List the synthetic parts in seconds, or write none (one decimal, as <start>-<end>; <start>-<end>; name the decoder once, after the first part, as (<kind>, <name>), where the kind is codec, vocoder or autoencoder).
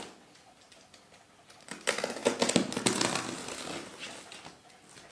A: none